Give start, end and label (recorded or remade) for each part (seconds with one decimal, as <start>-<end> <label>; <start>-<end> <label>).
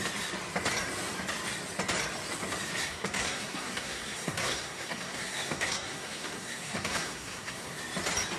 0.0-2.8 recorded; 2.8-7.8 remade; 7.8-8.4 recorded